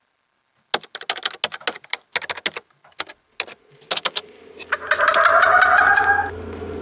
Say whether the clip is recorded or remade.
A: recorded